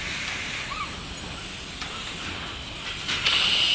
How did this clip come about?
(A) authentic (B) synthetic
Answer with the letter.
A